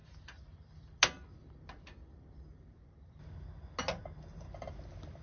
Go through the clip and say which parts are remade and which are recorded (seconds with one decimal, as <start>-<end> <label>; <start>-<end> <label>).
0.0-5.2 recorded